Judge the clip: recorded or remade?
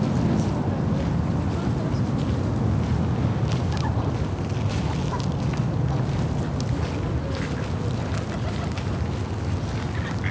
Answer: recorded